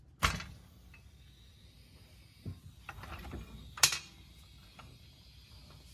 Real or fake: real